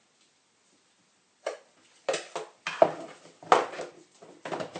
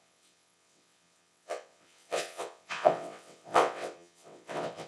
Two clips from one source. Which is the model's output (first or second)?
second